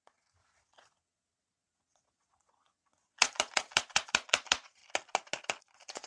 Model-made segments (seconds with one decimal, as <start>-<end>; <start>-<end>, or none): 0.0-4.8; 5.6-6.1

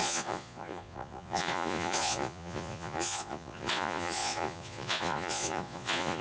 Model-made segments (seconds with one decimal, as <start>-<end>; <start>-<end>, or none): 0.0-6.2

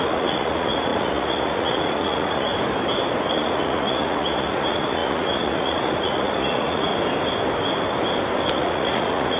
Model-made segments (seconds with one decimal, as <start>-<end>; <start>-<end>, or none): 0.0-2.5; 3.3-6.9; 8.5-9.4

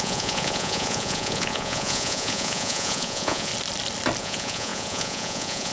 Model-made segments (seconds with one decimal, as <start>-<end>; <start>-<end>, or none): 0.0-3.5; 4.2-5.7